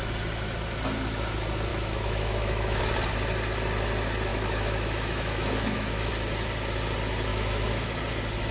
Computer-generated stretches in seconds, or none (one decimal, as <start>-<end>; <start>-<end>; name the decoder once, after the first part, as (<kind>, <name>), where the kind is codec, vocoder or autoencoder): 1.7-2.8 (autoencoder, DAC-VAE); 4.3-6.1; 7.3-7.9